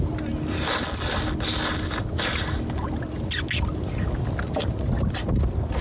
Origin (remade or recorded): recorded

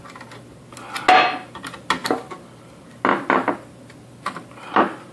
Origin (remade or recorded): recorded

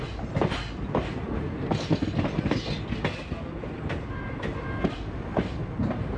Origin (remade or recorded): recorded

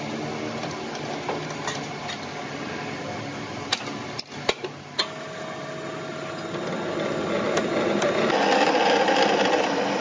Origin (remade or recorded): recorded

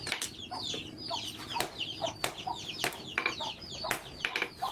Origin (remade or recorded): recorded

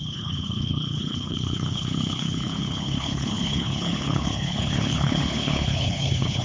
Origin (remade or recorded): remade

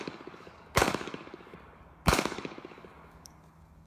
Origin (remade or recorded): remade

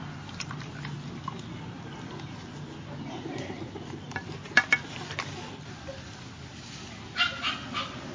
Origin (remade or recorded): recorded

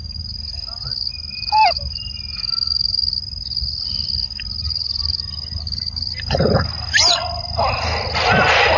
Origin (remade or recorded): recorded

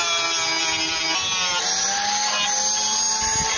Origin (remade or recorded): recorded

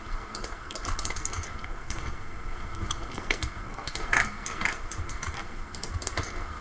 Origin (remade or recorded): remade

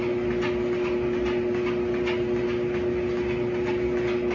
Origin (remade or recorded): recorded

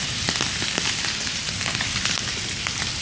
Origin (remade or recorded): recorded